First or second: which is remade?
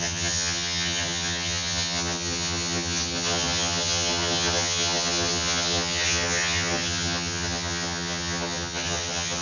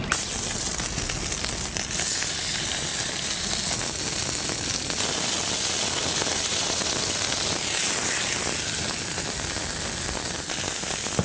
first